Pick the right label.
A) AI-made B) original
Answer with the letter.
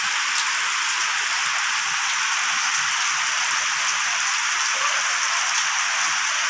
B